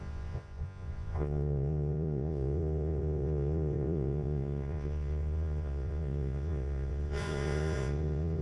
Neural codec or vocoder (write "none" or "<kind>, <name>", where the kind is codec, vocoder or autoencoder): vocoder, Vocos